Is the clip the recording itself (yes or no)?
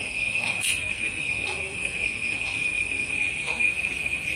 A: no